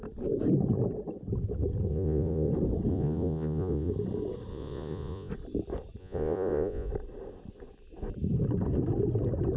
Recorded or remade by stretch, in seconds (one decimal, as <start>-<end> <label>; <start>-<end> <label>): 0.0-1.9 recorded; 1.9-2.5 remade; 2.5-2.9 recorded; 2.9-3.9 remade; 3.9-4.5 recorded; 4.5-5.3 remade; 5.3-6.0 recorded; 6.0-6.9 remade; 6.9-9.6 recorded